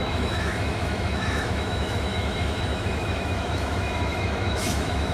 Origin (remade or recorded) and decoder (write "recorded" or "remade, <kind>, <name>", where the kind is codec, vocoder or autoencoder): remade, autoencoder, DAC-VAE